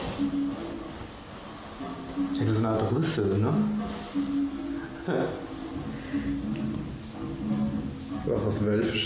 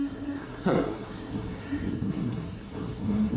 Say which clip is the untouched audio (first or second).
first